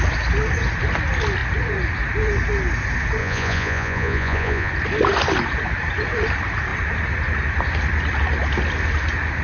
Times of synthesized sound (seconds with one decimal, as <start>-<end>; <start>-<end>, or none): 3.2-4.7